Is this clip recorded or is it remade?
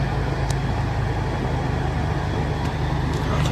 recorded